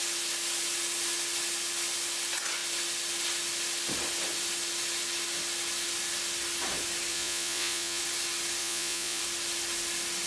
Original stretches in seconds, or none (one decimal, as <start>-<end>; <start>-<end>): 0.0-7.1; 8.0-8.6; 9.2-10.3